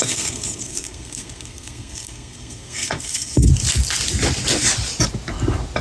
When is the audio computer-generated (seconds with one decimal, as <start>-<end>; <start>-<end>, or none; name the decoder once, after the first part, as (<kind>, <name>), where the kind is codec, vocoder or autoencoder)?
0.0-3.5 (codec, SNAC)